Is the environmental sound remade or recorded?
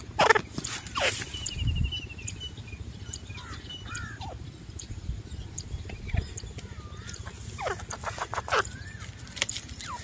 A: recorded